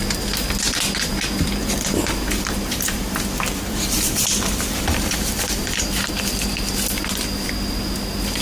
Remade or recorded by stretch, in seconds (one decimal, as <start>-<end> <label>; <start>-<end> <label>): 0.0-1.6 recorded; 1.6-6.1 remade; 6.1-8.4 recorded